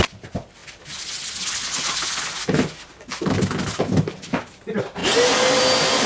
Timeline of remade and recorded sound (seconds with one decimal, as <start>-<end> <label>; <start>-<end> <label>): 0.0-6.1 recorded